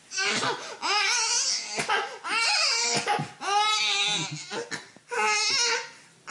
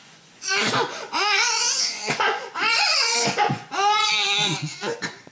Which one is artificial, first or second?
second